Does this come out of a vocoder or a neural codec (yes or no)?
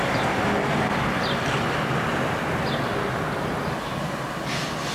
no